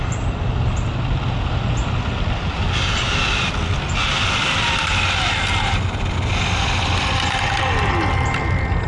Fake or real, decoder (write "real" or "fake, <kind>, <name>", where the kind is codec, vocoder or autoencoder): real